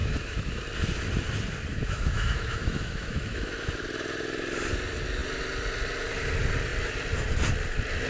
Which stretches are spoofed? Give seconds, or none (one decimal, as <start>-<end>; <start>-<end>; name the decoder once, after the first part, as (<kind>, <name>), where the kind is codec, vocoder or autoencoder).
0.0-0.6 (autoencoder, DAC-VAE); 1.7-3.5